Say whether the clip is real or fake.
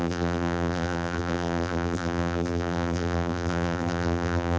fake